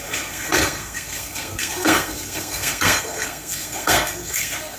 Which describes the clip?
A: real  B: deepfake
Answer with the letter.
B